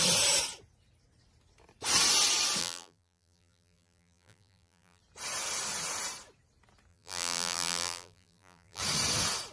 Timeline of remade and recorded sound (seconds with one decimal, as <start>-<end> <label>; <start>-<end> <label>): 0.0-2.6 recorded; 2.6-5.0 remade; 5.0-6.9 recorded; 6.9-8.8 remade; 8.8-9.5 recorded